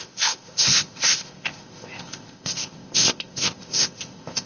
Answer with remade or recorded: remade